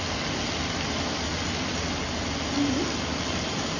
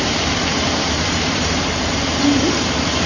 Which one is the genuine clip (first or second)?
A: first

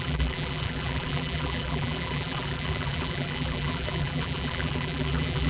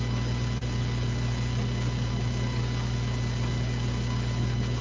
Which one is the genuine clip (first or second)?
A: second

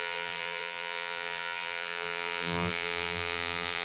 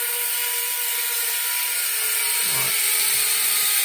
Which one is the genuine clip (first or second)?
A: second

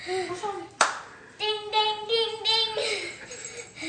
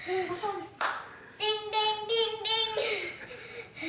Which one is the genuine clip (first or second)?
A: first